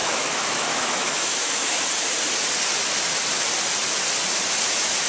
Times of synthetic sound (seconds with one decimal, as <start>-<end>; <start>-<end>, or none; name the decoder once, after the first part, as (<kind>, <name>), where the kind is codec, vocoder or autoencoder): 0.0-1.7 (autoencoder, DAC-VAE)